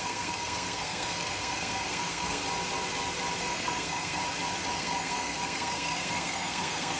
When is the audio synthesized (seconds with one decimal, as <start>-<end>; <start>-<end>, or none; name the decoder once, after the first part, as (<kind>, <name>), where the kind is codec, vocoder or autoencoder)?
0.0-2.4 (codec, SNAC); 3.4-4.2; 4.7-7.0